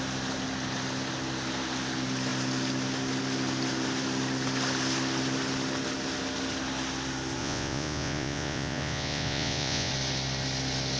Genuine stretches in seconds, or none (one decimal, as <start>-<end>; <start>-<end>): 0.0-7.4; 9.9-11.0